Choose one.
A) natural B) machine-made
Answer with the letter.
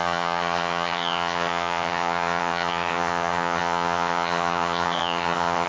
B